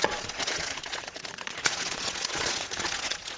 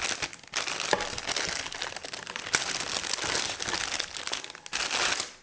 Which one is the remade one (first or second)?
first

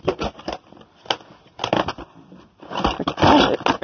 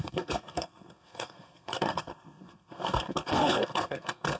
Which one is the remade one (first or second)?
second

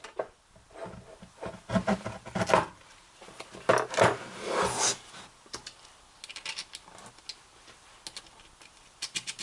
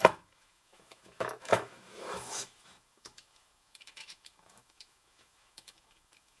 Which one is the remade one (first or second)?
second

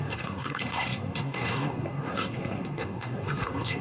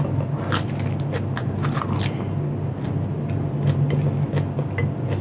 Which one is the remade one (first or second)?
first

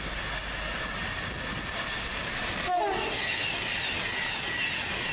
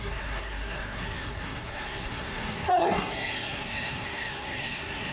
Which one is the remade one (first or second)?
second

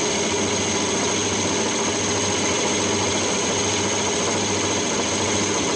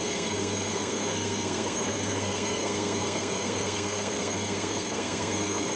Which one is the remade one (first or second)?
second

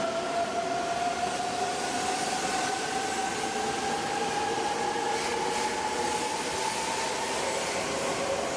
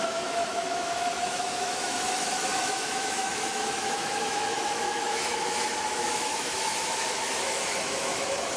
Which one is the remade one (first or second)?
second